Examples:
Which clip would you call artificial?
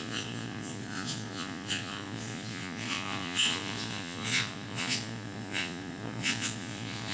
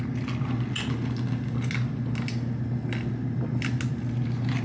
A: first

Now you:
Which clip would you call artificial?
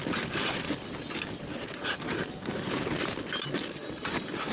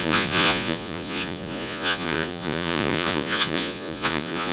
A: second